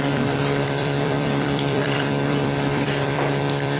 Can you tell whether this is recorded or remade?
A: remade